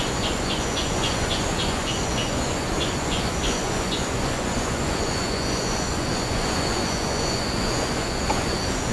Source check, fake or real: fake